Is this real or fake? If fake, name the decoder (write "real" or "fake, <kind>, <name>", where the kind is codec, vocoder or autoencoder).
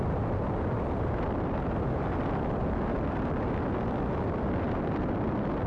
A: real